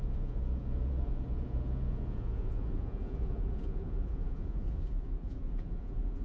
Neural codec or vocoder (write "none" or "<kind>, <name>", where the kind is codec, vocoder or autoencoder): vocoder, Vocos